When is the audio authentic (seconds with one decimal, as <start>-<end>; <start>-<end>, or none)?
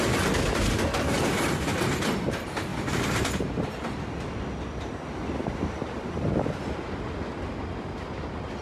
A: 0.0-2.7; 3.3-5.4; 6.1-8.6